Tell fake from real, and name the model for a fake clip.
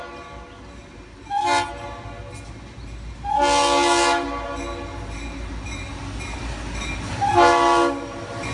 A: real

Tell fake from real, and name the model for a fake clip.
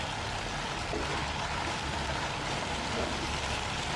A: fake, vocoder, BigVGAN v2